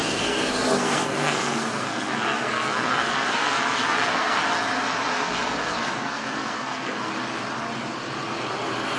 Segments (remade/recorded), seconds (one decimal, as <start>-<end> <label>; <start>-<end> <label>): 0.0-4.4 remade; 4.4-5.1 recorded; 5.1-7.1 remade; 7.1-9.0 recorded